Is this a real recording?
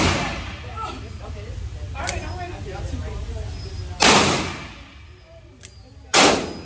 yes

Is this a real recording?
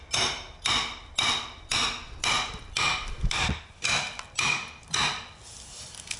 yes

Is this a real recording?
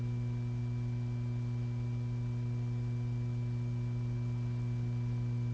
yes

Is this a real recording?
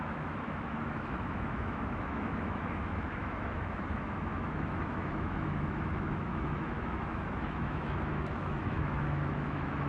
no